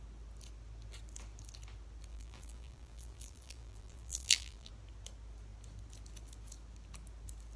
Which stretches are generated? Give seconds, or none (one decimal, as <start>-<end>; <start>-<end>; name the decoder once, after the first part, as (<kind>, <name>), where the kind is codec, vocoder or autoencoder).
2.1-4.7 (vocoder, BigVGAN v2)